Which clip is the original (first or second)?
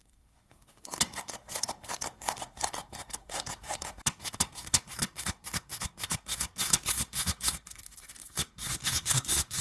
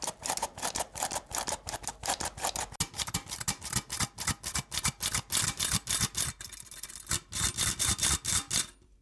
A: second